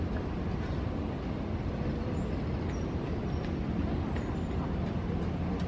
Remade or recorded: recorded